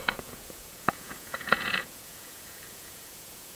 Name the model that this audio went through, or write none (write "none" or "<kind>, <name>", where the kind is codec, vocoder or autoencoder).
vocoder, Vocos